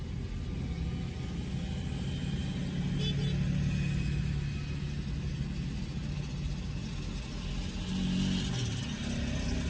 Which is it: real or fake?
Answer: real